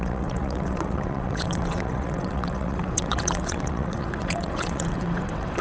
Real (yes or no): no